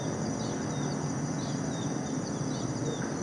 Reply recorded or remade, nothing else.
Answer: recorded